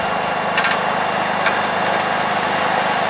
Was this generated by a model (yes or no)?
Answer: no